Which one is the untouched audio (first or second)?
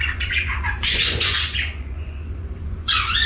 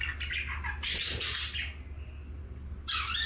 second